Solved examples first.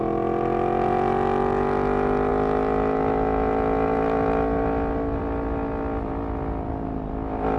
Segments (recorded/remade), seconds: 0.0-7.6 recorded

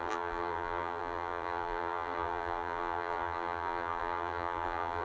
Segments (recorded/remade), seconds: 0.0-5.0 remade

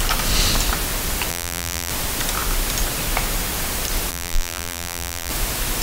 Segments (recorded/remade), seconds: 0.0-1.3 recorded; 1.3-1.9 remade; 1.9-4.1 recorded; 4.1-5.3 remade; 5.3-5.8 recorded

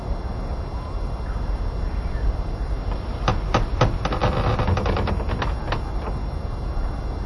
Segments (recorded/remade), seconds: 0.0-4.2 remade; 4.2-5.9 recorded; 5.9-7.3 remade

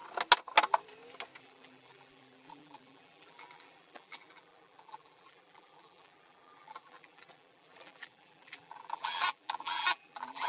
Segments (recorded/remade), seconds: 0.0-1.4 recorded; 1.4-10.5 remade

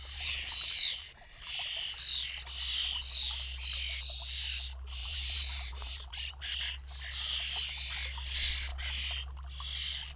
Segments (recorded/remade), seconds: 0.0-1.5 remade; 1.5-5.0 recorded; 5.0-6.4 remade; 6.4-10.2 recorded

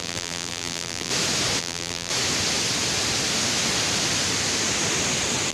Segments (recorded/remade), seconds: 0.0-1.1 remade; 1.1-1.6 recorded; 1.6-2.1 remade; 2.1-5.5 recorded

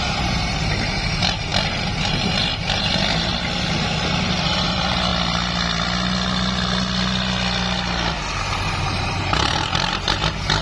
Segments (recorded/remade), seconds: 0.0-1.5 remade; 1.5-2.0 recorded; 2.0-3.3 remade; 3.3-4.4 recorded; 4.4-5.1 remade; 5.1-8.4 recorded; 8.4-10.6 remade